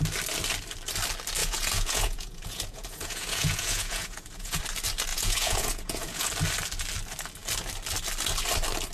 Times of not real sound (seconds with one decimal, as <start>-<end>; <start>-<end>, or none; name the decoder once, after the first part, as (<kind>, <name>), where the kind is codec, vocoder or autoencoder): 1.4-4.6 (vocoder, Vocos); 5.1-6.3

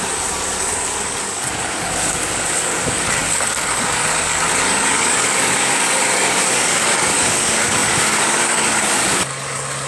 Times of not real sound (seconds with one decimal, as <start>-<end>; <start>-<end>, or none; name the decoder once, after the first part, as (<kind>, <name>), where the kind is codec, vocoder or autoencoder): 0.0-9.9 (codec, DAC)